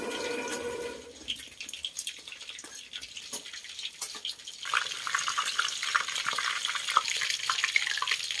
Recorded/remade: recorded